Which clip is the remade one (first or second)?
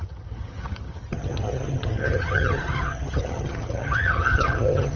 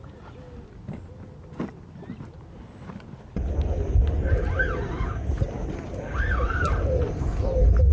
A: first